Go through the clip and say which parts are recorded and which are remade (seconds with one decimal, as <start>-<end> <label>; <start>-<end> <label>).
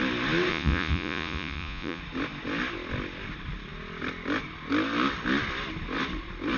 0.0-0.5 recorded; 0.5-2.0 remade; 2.0-6.6 recorded